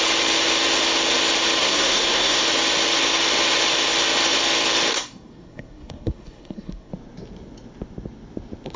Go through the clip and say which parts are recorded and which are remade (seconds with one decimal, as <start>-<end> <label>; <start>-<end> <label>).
0.0-1.6 recorded; 1.6-2.4 remade; 2.4-4.9 recorded; 4.9-6.9 remade; 6.9-8.8 recorded

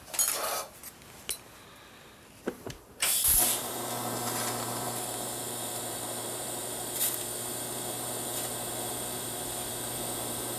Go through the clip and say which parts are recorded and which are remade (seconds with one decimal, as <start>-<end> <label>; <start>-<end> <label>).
0.0-0.8 remade; 0.8-2.5 recorded; 2.5-10.6 remade

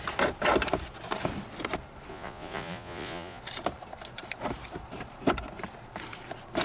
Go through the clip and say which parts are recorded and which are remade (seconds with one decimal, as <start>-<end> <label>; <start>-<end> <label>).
0.0-2.1 recorded; 2.1-3.4 remade; 3.4-6.6 recorded

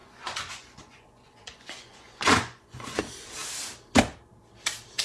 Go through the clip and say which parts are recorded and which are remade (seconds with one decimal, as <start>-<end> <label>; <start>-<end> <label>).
0.0-3.0 remade; 3.0-5.0 recorded

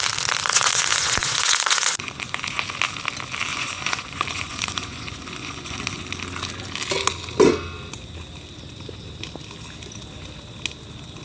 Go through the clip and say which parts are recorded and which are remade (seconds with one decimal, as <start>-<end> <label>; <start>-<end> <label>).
0.0-0.5 recorded; 0.5-2.6 remade; 2.6-3.5 recorded; 3.5-6.0 remade; 6.0-11.2 recorded

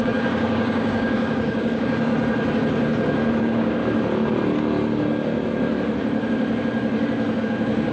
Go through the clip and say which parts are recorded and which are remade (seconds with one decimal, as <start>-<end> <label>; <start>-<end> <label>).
0.0-2.1 remade; 2.1-3.4 recorded; 3.4-3.8 remade; 3.8-7.4 recorded; 7.4-7.9 remade

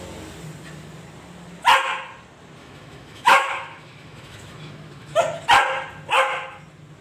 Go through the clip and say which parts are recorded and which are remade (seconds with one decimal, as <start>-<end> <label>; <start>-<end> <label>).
0.0-2.6 recorded; 2.6-5.2 remade; 5.2-7.0 recorded

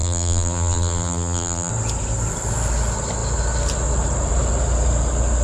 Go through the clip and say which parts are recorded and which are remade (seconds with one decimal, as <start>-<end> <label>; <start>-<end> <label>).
0.0-1.7 remade; 1.7-5.4 recorded